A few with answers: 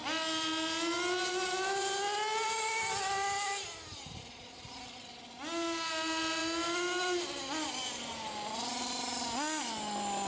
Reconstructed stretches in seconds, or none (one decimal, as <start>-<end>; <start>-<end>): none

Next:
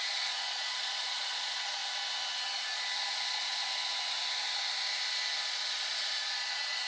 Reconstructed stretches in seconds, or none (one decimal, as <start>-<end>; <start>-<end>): 0.0-1.8; 3.1-3.5; 5.5-6.9

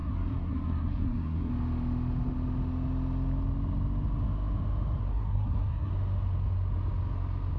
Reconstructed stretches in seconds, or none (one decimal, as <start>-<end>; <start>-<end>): 0.0-1.5; 5.1-5.9

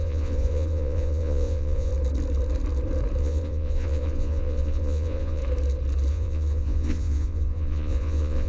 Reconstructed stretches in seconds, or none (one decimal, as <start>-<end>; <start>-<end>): 0.0-1.9; 3.2-5.4; 6.1-8.5